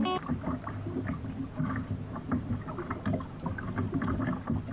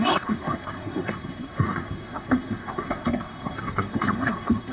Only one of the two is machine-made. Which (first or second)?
second